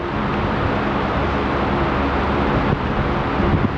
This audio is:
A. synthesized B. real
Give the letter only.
B